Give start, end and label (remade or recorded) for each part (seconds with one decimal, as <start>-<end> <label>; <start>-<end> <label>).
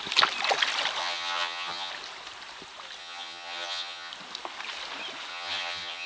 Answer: 0.0-1.0 recorded; 1.0-1.9 remade; 1.9-3.0 recorded; 3.0-4.1 remade; 4.1-5.3 recorded; 5.3-6.1 remade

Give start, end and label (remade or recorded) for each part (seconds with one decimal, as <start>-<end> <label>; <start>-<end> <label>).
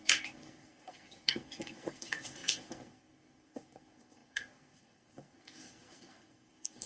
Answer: 0.0-6.9 remade